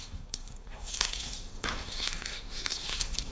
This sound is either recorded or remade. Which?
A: remade